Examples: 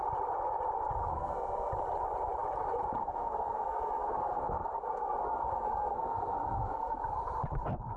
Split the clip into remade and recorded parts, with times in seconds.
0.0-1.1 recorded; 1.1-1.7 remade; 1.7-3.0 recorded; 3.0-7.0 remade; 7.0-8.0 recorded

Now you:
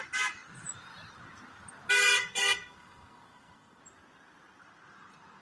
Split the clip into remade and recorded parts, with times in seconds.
0.0-2.2 recorded; 2.2-3.8 remade; 3.8-5.4 recorded